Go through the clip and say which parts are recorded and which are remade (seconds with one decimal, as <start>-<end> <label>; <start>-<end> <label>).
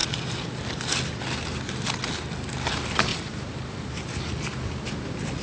0.0-3.1 recorded; 3.1-4.2 remade; 4.2-5.4 recorded